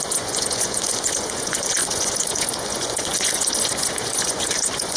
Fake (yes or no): yes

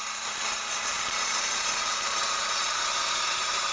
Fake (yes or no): no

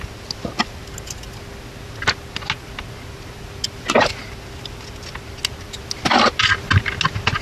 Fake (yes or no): no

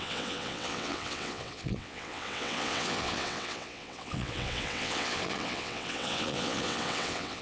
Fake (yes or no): yes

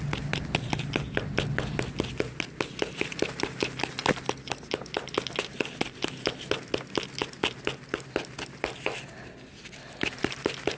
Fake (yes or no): no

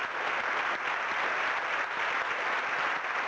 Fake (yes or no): no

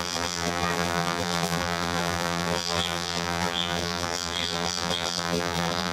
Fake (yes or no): yes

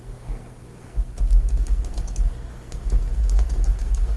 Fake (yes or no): yes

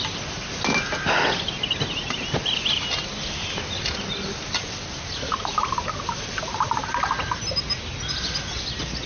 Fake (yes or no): no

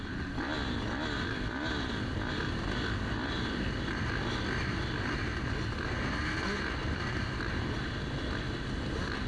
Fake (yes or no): no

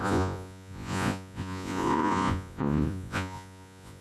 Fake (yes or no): yes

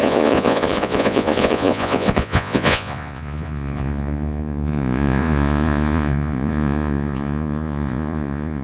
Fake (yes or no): yes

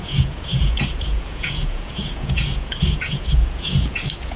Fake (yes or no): yes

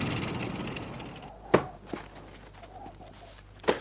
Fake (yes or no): no